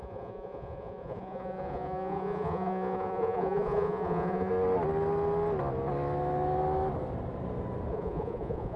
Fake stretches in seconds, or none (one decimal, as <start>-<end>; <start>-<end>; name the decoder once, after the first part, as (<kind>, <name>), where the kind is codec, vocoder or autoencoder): 0.0-4.5 (vocoder, Vocos); 7.9-8.8